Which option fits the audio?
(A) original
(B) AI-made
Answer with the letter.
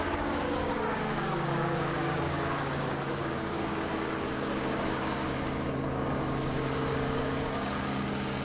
B